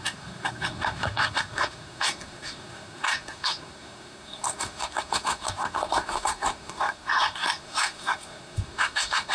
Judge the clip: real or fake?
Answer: fake